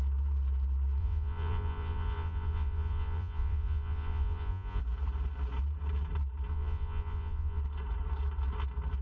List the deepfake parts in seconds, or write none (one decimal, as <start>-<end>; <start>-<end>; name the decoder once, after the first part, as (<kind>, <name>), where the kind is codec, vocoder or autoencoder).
1.0-4.8 (vocoder, Vocos); 6.5-7.6